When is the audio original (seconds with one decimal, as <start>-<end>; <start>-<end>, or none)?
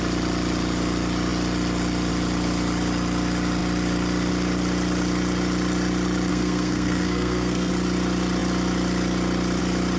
0.0-6.3; 7.7-10.0